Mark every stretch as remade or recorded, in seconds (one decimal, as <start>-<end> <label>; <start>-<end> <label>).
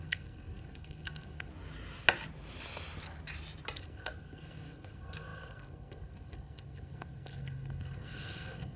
0.0-1.5 remade; 1.5-3.8 recorded; 3.8-8.8 remade